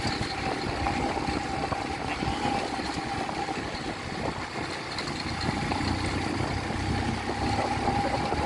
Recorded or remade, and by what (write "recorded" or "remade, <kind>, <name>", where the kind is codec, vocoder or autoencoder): recorded